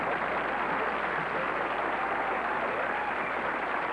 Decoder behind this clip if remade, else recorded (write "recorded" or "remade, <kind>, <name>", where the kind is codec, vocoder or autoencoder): recorded